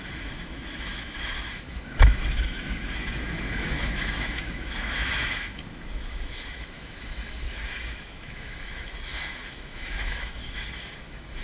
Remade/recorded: remade